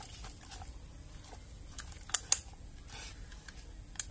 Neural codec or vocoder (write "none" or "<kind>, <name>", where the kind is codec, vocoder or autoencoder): none